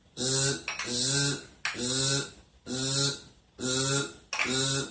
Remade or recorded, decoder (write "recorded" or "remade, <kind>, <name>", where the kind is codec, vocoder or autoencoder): recorded